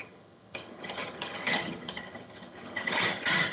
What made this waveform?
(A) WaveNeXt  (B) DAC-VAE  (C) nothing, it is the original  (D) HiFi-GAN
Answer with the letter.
D